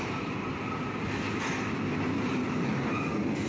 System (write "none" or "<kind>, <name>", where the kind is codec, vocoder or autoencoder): none